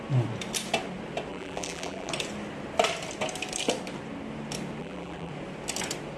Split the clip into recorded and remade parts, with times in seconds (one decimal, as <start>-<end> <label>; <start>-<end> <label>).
0.0-1.3 recorded; 1.3-2.1 remade; 2.1-4.8 recorded; 4.8-5.3 remade; 5.3-6.2 recorded